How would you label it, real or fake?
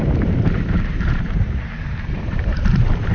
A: fake